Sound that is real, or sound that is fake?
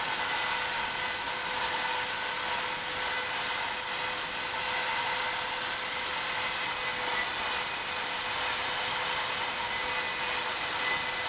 real